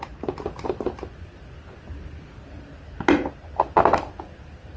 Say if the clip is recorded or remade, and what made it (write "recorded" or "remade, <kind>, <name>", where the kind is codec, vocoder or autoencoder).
recorded